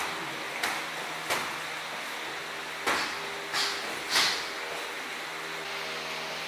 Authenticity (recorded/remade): recorded